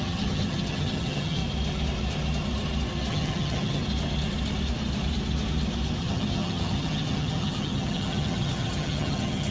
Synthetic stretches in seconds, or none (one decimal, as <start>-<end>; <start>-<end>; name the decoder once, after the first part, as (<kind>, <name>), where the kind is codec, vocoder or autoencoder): 0.0-1.4 (vocoder, HiFi-GAN); 3.1-3.8; 6.0-9.5